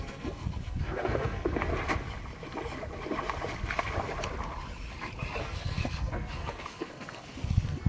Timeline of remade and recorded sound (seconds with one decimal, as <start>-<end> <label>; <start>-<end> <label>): 0.0-1.7 remade; 1.7-5.4 recorded; 5.4-7.9 remade